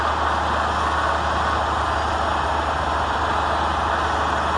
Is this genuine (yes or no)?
yes